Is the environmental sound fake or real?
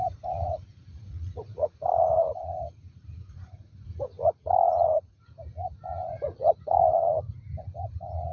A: fake